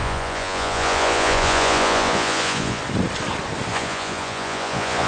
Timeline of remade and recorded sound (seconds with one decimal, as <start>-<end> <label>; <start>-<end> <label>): 0.0-2.8 remade; 2.8-3.7 recorded; 3.7-5.1 remade